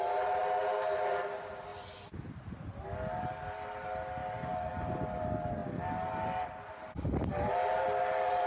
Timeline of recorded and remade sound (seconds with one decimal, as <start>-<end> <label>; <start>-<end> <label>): 0.0-8.5 recorded